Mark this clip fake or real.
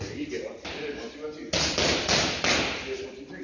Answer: real